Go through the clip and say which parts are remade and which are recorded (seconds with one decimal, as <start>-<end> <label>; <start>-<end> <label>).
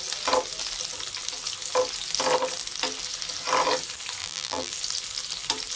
0.0-4.2 recorded; 4.2-4.7 remade; 4.7-5.8 recorded